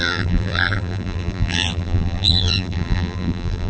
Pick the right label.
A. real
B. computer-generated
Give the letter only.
B